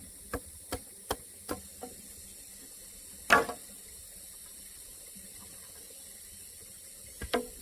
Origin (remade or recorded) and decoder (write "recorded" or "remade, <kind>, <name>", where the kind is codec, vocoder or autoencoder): recorded